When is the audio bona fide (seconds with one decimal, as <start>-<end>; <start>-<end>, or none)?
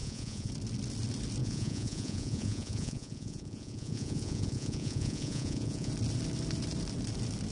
0.5-1.4; 5.9-7.5